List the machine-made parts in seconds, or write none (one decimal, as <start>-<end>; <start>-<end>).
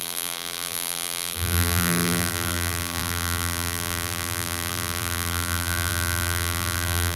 0.0-7.2